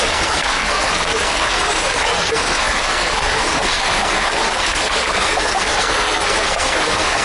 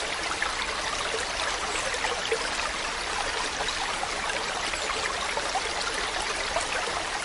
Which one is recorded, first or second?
second